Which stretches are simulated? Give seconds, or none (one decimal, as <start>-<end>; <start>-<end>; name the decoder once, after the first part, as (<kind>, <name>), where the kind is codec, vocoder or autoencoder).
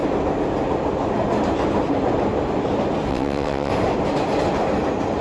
3.1-3.7 (vocoder, WaveNeXt)